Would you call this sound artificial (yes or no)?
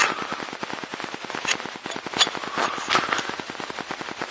no